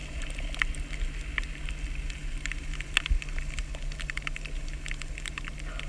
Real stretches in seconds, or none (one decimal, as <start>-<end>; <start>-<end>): 0.0-5.9